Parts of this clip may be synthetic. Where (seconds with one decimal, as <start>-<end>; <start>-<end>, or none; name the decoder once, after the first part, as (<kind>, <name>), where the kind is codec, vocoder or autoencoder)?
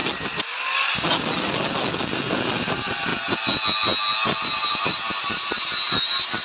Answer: 2.6-3.1 (vocoder, BigVGAN v2); 4.4-6.4